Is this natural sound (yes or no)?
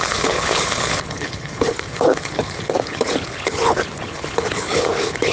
no